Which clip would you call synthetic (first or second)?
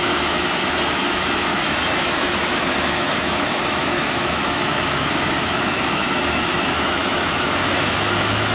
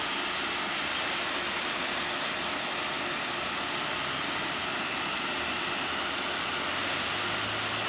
first